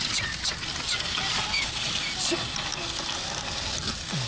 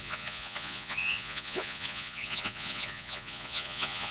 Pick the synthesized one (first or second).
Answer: second